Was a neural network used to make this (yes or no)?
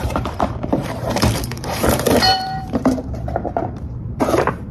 yes